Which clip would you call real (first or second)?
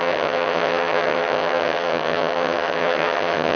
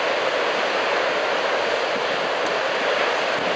second